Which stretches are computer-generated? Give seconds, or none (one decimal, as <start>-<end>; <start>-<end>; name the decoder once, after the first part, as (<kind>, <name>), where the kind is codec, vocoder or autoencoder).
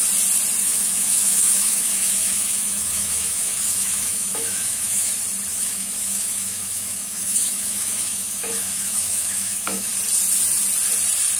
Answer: 0.6-5.1 (autoencoder, DAC-VAE); 5.5-9.9